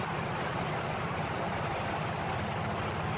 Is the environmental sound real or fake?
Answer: real